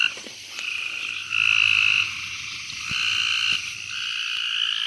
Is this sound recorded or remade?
remade